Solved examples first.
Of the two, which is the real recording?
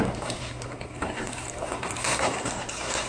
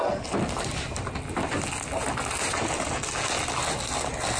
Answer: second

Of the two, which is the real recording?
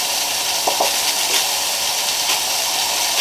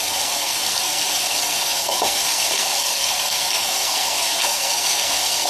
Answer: first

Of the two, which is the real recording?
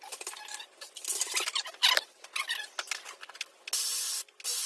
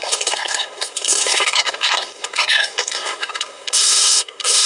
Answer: first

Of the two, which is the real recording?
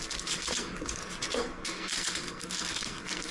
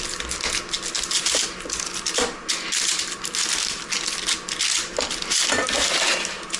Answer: second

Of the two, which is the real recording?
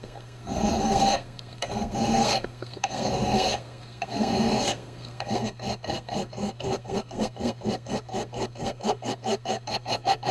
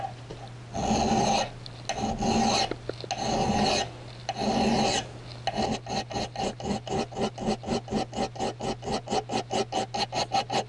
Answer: second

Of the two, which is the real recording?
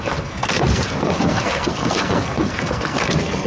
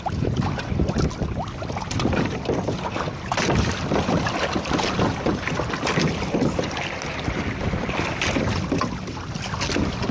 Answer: second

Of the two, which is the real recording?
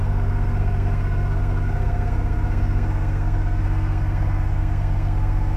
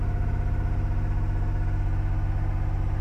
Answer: second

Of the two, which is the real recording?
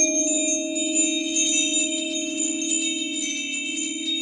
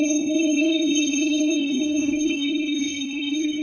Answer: first